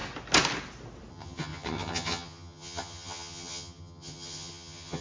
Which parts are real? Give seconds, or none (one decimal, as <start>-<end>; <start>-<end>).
0.0-1.1